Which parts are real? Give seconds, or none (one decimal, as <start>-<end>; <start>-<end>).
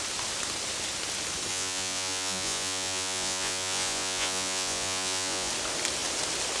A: 0.0-1.5; 5.5-6.6